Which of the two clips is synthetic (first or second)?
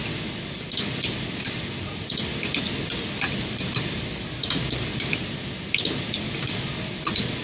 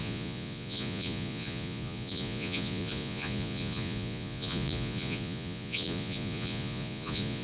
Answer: second